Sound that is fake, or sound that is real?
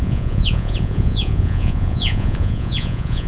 fake